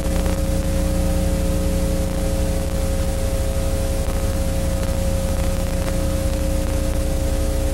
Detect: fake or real real